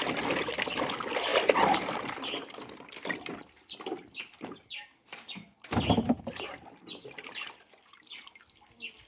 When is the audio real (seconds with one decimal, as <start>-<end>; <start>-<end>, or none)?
0.0-9.1